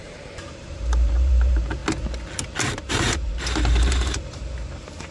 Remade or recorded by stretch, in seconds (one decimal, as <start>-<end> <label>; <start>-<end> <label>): 0.0-1.8 remade; 1.8-2.9 recorded; 2.9-5.1 remade